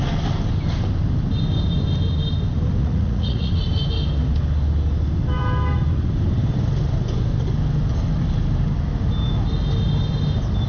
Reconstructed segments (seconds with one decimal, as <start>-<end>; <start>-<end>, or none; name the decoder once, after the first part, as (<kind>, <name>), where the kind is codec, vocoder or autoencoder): 2.8-3.5 (vocoder, Vocos)